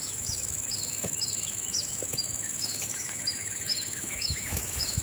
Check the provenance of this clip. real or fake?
fake